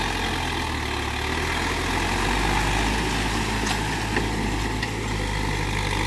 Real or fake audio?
real